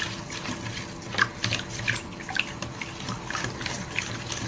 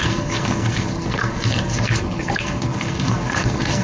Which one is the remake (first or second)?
second